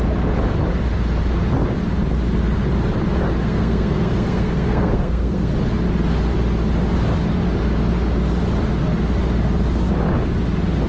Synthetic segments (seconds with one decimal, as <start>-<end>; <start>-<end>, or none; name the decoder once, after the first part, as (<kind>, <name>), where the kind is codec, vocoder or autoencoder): 3.4-5.5 (codec, SNAC)